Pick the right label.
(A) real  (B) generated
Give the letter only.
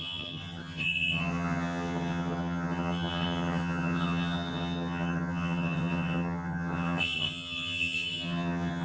B